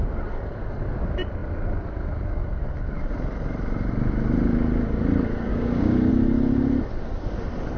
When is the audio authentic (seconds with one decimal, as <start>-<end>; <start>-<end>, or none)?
0.0-5.5; 6.1-7.8